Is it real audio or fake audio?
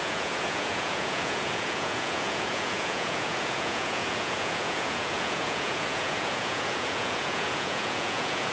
fake